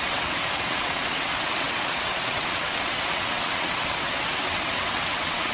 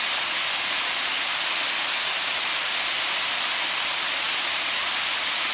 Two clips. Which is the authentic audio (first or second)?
second